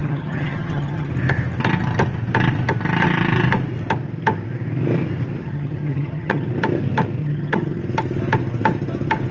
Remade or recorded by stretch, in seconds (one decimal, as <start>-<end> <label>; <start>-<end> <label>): 0.0-1.1 remade; 1.1-5.4 recorded; 5.4-6.5 remade; 6.5-7.2 recorded; 7.2-7.8 remade; 7.8-9.3 recorded